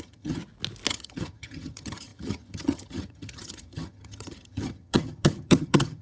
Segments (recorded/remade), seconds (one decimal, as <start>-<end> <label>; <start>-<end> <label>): 0.0-0.4 remade; 0.4-0.9 recorded; 0.9-6.0 remade